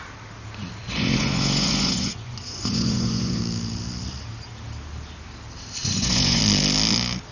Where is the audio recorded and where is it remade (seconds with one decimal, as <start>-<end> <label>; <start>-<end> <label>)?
0.0-0.8 recorded; 0.8-3.4 remade; 3.4-5.8 recorded; 5.8-6.4 remade; 6.4-7.3 recorded